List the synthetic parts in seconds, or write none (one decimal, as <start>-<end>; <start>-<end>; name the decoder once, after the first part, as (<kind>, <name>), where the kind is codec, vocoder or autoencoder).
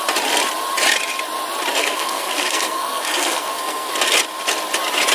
1.8-3.9 (codec, SNAC)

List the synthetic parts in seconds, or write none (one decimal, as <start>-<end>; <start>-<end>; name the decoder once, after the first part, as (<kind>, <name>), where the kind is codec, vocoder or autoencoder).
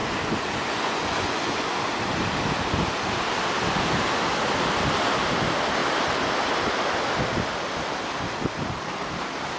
0.0-1.9 (vocoder, Vocos)